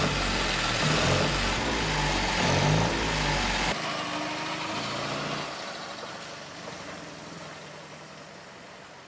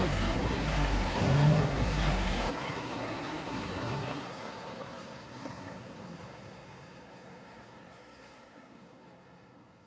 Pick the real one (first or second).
first